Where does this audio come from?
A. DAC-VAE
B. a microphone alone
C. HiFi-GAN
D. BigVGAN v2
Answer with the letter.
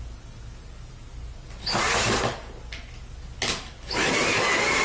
B